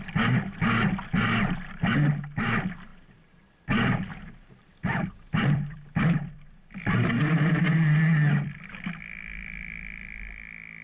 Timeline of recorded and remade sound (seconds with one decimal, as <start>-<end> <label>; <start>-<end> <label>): 0.0-2.9 recorded; 2.9-7.1 remade; 7.1-10.8 recorded